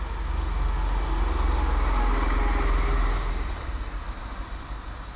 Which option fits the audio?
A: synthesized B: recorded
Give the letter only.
B